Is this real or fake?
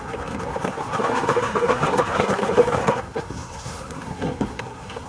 fake